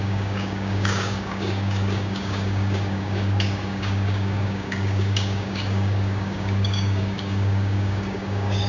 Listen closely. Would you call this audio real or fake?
fake